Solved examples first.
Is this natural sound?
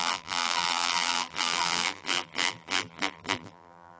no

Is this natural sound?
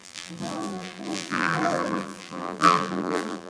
no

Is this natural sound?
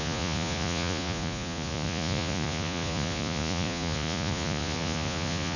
no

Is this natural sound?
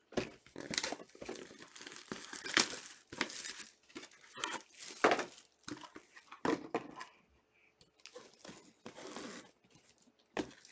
yes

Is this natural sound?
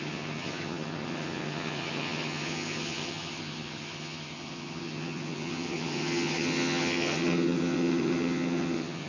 no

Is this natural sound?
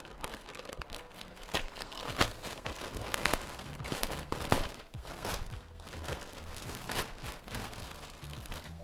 no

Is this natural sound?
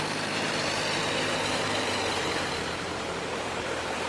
no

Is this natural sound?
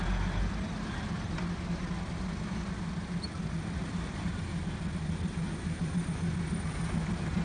yes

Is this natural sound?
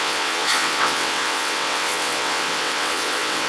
no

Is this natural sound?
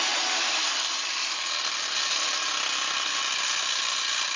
yes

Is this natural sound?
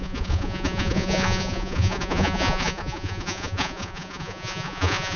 no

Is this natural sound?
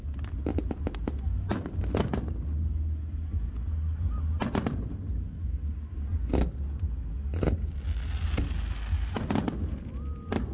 yes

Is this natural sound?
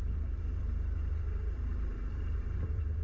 no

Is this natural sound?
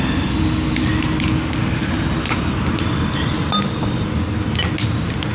yes